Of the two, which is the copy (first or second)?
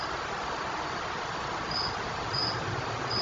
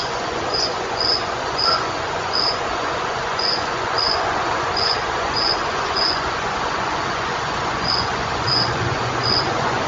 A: second